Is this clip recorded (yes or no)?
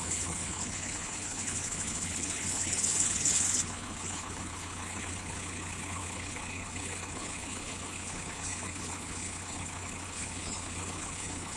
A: no